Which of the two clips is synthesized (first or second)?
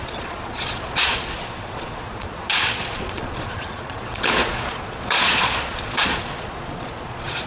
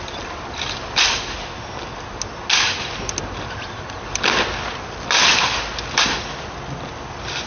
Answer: first